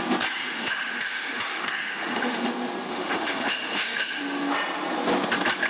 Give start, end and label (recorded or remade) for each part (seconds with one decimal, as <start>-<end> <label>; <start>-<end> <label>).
0.0-0.4 recorded; 0.4-2.5 remade; 2.5-2.9 recorded; 2.9-4.2 remade; 4.2-5.7 recorded